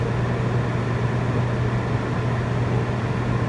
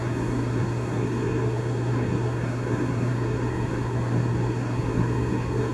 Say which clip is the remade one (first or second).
second